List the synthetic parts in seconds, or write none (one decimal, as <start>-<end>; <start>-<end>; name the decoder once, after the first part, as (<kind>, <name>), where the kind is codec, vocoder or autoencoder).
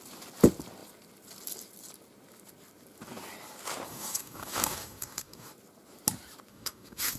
3.9-5.5 (codec, DAC); 6.5-7.2